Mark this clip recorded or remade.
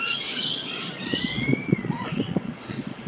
remade